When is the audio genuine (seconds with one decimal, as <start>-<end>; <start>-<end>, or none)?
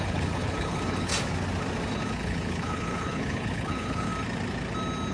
1.1-1.9; 4.1-5.1